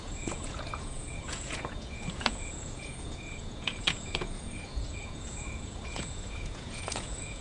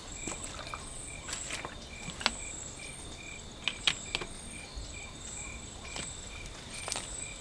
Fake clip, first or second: first